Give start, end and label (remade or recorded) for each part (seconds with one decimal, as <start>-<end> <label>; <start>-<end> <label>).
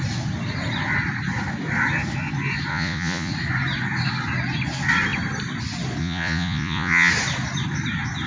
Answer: 0.0-2.7 recorded; 2.7-3.3 remade; 3.3-6.0 recorded; 6.0-7.1 remade; 7.1-8.3 recorded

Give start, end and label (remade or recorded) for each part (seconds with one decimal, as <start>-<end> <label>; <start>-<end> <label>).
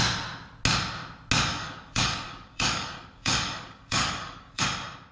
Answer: 0.0-1.5 recorded; 1.5-4.6 remade; 4.6-5.1 recorded